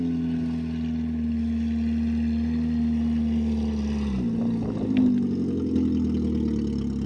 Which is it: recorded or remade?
recorded